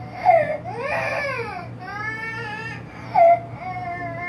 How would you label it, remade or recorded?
recorded